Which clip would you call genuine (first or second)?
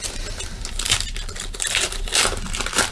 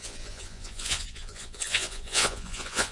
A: first